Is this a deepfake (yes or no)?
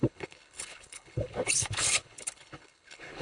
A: yes